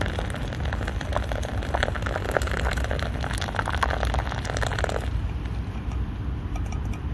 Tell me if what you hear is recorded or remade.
recorded